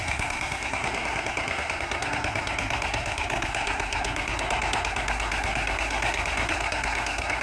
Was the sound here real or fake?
fake